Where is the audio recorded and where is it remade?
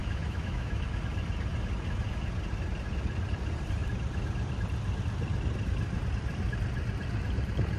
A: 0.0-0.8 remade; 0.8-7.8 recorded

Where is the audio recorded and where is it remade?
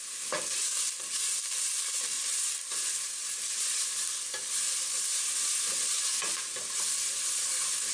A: 0.0-7.9 recorded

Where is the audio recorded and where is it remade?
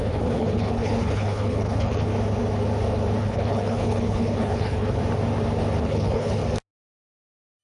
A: 0.0-2.1 remade; 2.1-3.2 recorded; 3.2-5.0 remade; 5.0-5.8 recorded; 5.8-6.4 remade; 6.4-7.6 recorded